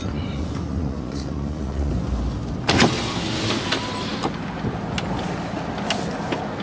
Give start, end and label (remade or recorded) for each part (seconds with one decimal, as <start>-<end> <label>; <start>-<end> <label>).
0.0-1.9 remade; 1.9-6.6 recorded